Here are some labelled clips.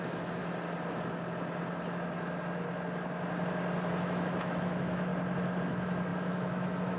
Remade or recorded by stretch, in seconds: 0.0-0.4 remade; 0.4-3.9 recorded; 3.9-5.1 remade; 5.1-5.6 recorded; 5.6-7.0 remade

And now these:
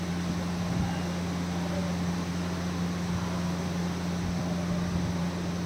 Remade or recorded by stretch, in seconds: 0.0-5.7 recorded

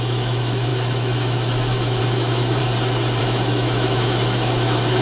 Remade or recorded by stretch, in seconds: 0.0-2.6 remade; 2.6-3.2 recorded; 3.2-5.0 remade

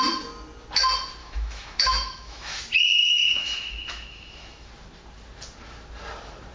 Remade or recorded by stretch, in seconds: 0.0-1.2 recorded; 1.2-2.6 remade; 2.6-3.0 recorded; 3.0-4.7 remade; 4.7-6.5 recorded

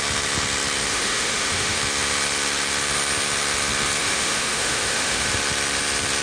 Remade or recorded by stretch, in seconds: 0.0-0.9 recorded; 0.9-1.8 remade; 1.8-4.0 recorded; 4.0-5.3 remade; 5.3-6.2 recorded

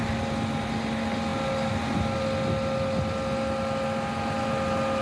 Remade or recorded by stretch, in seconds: 0.0-5.0 recorded

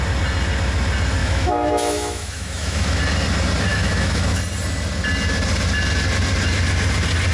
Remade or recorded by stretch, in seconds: 0.0-1.2 recorded; 1.2-3.0 remade; 3.0-3.7 recorded; 3.7-4.4 remade; 4.4-7.3 recorded